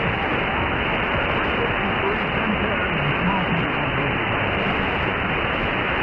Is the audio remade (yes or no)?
no